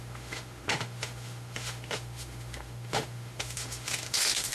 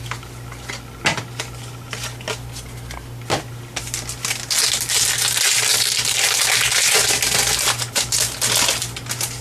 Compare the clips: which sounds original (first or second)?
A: second